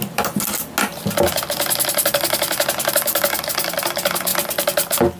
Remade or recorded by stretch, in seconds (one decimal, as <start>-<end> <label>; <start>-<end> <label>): 0.0-5.2 recorded

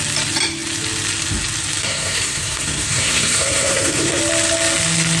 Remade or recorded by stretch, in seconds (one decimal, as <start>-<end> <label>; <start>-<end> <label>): 0.0-1.8 recorded; 1.8-4.2 remade; 4.2-5.2 recorded

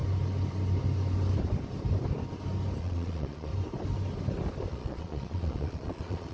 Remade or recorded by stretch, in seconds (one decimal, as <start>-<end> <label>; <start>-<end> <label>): 0.0-2.8 recorded; 2.8-3.5 remade; 3.5-4.7 recorded; 4.7-6.3 remade

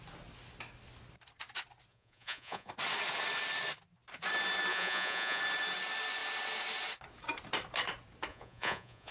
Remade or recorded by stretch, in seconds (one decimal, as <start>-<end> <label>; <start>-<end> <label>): 0.0-1.9 recorded; 1.9-2.7 remade; 2.7-4.7 recorded; 4.7-5.4 remade; 5.4-8.3 recorded; 8.3-9.1 remade

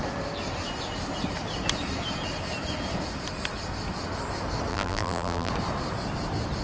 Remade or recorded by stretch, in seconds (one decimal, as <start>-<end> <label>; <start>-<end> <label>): 0.0-4.7 recorded; 4.7-5.5 remade; 5.5-6.6 recorded

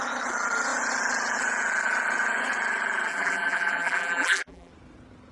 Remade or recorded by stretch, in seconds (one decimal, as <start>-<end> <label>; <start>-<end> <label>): 0.0-3.1 recorded; 3.1-4.7 remade; 4.7-5.3 recorded

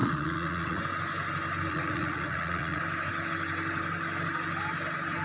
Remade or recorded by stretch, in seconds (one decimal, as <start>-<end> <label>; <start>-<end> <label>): 0.0-0.8 remade; 0.8-1.7 recorded; 1.7-2.8 remade; 2.8-5.2 recorded

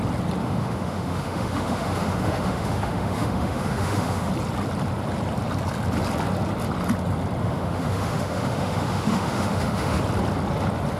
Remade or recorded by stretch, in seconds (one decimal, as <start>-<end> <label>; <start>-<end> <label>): 0.0-0.4 recorded; 0.4-4.3 remade; 4.3-7.4 recorded; 7.4-10.0 remade; 10.0-11.0 recorded